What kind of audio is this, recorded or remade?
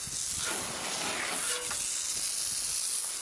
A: recorded